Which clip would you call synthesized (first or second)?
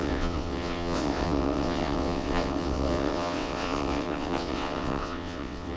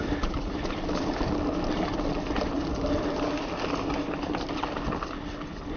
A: first